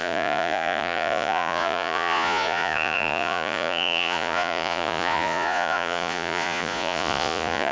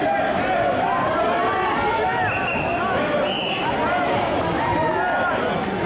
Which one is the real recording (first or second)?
second